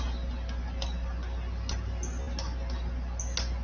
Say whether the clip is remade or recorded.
recorded